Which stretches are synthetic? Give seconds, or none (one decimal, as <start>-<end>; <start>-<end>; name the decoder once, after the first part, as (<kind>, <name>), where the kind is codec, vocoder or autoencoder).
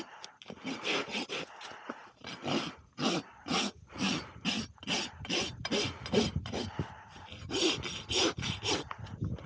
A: 3.4-4.1 (vocoder, Vocos)